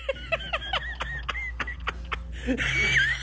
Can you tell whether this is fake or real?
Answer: real